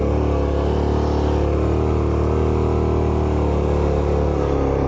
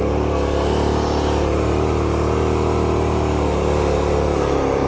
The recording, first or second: first